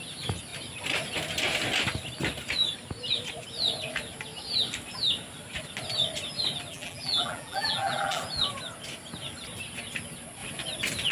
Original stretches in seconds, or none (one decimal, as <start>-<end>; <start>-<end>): 0.0-6.7; 8.2-11.1